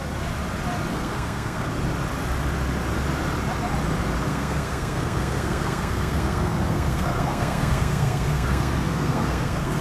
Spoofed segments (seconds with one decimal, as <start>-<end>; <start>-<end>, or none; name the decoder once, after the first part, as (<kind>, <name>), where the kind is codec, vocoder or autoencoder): 0.9-1.7 (codec, SNAC); 4.3-9.8